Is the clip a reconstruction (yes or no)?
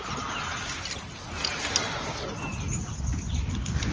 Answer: no